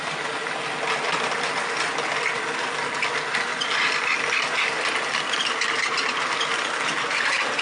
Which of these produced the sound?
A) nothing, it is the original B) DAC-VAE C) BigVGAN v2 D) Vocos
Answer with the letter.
A